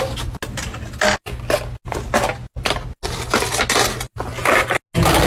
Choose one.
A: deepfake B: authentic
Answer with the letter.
B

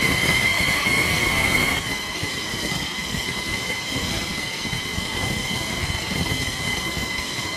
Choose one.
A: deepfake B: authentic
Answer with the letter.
A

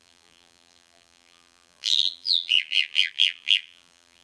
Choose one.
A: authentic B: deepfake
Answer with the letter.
B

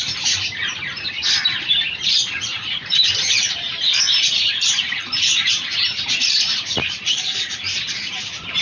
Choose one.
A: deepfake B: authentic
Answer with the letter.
A